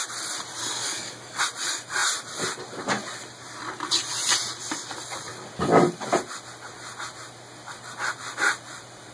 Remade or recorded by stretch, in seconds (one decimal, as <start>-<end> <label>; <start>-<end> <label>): 0.0-0.6 recorded; 0.6-1.4 remade; 1.4-9.1 recorded